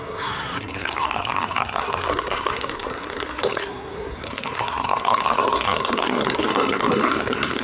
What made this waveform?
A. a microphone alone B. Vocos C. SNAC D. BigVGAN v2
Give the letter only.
C